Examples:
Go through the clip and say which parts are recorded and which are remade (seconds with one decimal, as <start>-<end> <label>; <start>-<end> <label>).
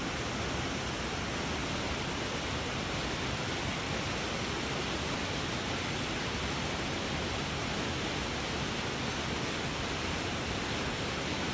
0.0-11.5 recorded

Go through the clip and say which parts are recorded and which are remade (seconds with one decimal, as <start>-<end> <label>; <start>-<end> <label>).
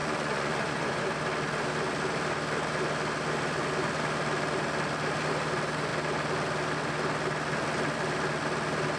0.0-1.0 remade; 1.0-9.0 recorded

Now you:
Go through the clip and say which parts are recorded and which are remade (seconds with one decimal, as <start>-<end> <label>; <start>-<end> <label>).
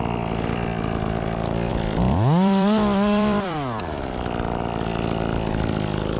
0.0-1.7 recorded; 1.7-3.8 remade; 3.8-6.2 recorded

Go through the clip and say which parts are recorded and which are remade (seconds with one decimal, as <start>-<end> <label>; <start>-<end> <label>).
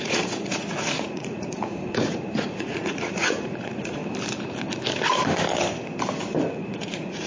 0.0-4.0 remade; 4.0-6.7 recorded; 6.7-7.3 remade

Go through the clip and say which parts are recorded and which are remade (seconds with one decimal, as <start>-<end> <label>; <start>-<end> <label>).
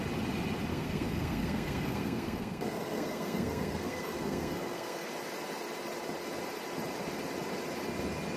0.0-0.7 recorded; 0.7-5.1 remade; 5.1-8.4 recorded